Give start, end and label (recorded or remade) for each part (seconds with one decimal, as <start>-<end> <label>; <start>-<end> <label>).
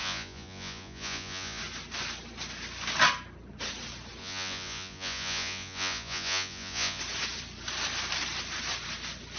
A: 0.0-1.6 remade; 1.6-4.2 recorded; 4.2-7.0 remade; 7.0-9.4 recorded